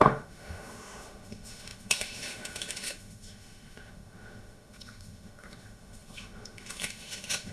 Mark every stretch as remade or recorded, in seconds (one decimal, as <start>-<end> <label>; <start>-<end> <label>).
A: 0.0-7.5 remade